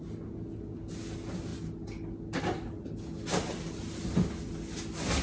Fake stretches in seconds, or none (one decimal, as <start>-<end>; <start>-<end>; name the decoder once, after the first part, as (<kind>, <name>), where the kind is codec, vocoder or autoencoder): none